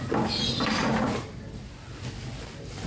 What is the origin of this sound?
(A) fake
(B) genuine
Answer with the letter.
B